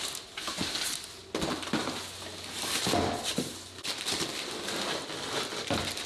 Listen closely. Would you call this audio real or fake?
real